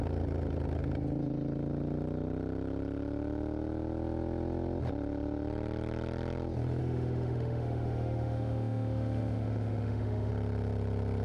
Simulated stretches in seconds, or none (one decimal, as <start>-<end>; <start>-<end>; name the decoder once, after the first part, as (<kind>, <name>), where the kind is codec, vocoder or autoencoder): 6.8-10.3 (autoencoder, DAC-VAE)